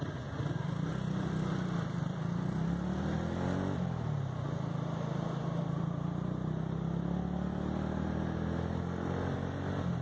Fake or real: real